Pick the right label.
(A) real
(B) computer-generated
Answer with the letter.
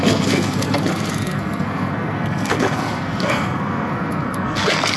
B